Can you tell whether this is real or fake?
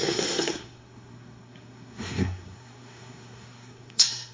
fake